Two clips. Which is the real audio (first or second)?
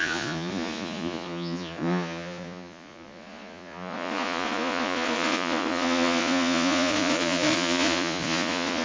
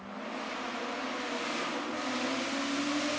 second